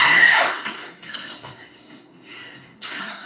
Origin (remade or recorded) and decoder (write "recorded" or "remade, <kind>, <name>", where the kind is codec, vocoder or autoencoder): remade, codec, SNAC